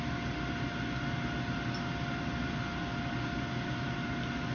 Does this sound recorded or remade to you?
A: recorded